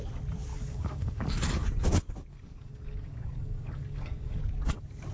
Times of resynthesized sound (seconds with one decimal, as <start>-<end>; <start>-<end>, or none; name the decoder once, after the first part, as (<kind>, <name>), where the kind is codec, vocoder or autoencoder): 0.5-1.3 (codec, DAC); 2.3-4.4